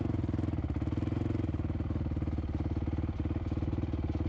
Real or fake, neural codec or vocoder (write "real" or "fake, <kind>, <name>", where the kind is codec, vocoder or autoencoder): real